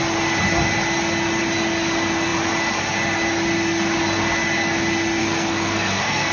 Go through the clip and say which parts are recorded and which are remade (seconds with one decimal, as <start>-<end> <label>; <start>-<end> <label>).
0.0-5.2 recorded; 5.2-6.3 remade